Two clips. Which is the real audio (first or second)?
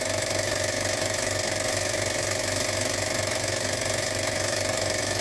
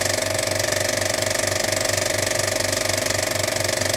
second